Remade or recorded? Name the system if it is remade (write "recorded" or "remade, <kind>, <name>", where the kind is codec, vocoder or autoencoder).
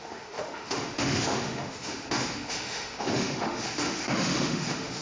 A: remade, autoencoder, DAC-VAE